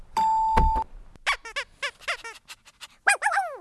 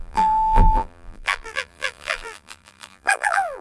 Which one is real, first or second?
first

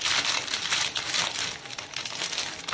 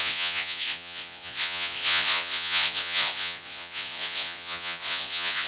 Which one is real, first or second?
first